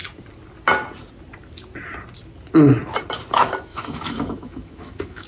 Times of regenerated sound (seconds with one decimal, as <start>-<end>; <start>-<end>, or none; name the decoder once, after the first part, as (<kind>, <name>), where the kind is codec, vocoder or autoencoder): 3.7-5.3 (autoencoder, DAC-VAE)

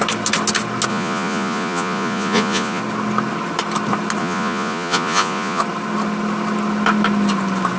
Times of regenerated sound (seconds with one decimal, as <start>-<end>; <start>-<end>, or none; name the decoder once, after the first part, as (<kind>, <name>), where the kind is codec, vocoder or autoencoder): 0.9-2.8 (vocoder, Vocos); 4.2-5.6

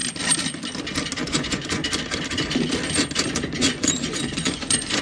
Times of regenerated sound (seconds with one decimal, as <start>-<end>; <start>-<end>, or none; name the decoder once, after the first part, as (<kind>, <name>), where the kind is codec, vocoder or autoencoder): 1.2-1.8 (vocoder, Vocos); 3.3-5.0

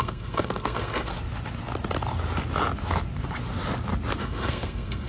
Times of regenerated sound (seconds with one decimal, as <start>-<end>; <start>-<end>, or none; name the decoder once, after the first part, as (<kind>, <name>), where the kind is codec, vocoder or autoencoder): 0.0-1.1 (codec, SNAC); 4.2-5.1

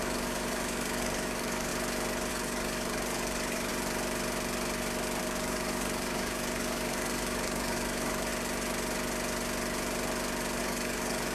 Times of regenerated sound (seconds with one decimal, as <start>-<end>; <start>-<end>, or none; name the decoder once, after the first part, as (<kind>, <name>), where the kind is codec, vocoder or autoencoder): 0.0-1.7 (codec, DAC); 2.3-3.7; 5.2-8.3; 10.6-11.3

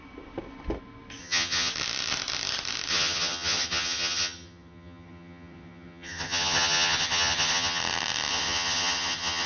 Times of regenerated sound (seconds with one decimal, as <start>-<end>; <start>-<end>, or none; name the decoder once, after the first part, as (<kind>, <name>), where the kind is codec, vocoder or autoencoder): 1.2-1.7 (vocoder, HiFi-GAN); 2.9-7.8; 8.3-9.5